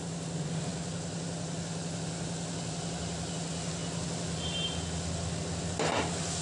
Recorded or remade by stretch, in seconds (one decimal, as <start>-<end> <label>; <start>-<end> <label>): 0.0-6.4 recorded